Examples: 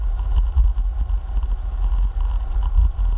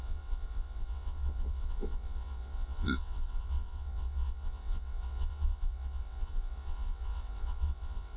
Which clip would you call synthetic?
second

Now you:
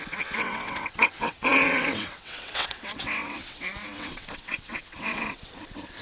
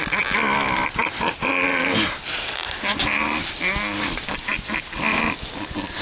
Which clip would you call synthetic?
first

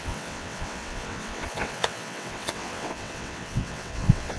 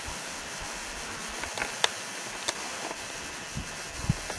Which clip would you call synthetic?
first